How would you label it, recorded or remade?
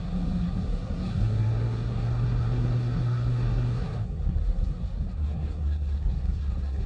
remade